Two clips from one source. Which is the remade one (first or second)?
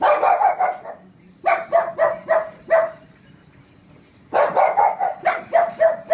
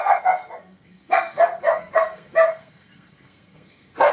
second